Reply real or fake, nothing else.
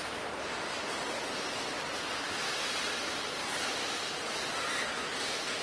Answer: real